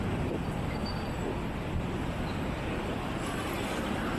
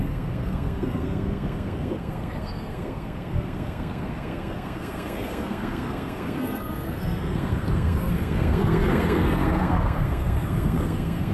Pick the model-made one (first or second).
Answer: second